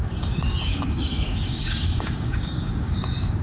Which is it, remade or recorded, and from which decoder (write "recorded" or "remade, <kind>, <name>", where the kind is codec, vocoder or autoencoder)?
remade, codec, DAC